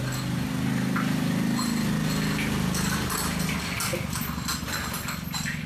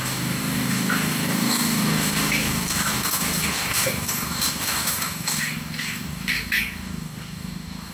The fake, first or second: second